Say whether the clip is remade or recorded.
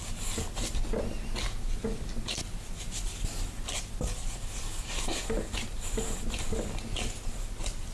recorded